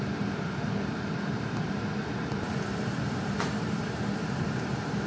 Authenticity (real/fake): fake